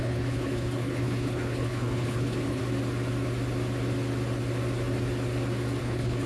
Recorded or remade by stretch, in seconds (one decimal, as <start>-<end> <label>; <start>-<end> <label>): 0.0-2.6 remade; 2.6-5.8 recorded; 5.8-6.3 remade